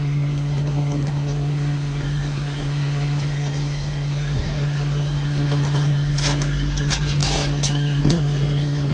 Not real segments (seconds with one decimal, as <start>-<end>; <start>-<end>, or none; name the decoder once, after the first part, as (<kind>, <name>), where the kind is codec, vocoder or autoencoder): 0.0-8.9 (codec, SNAC)